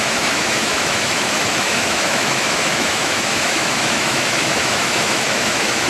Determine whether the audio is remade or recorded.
remade